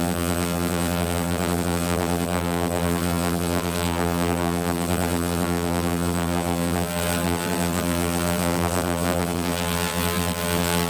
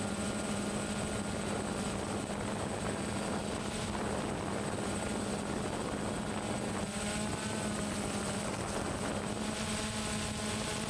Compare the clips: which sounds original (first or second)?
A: second